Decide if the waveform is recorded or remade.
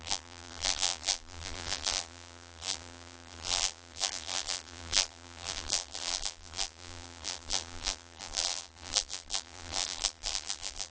remade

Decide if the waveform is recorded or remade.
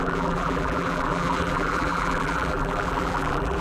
remade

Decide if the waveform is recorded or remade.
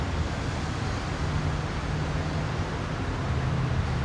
recorded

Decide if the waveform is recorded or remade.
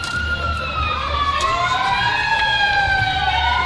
remade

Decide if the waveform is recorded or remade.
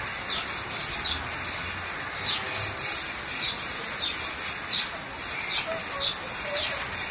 recorded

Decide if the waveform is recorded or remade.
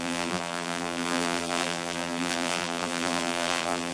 remade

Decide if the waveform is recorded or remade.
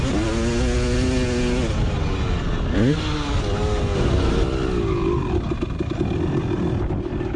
recorded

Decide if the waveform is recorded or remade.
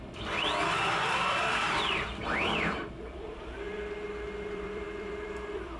remade